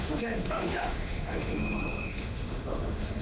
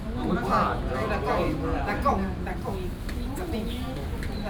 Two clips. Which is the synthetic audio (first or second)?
first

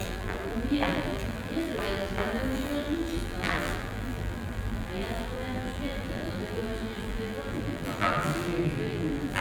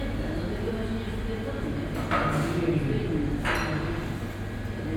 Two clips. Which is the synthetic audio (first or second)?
first